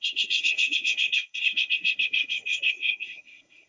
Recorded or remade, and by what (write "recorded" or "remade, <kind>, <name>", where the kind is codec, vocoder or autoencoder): remade, codec, SNAC